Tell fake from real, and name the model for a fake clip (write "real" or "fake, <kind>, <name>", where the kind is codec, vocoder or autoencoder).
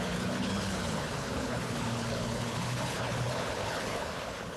fake, codec, HILCodec